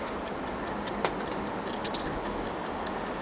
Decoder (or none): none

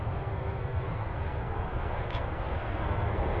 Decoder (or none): codec, SNAC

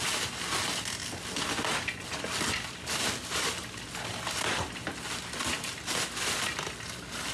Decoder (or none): none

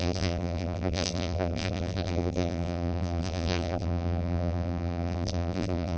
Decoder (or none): vocoder, BigVGAN v2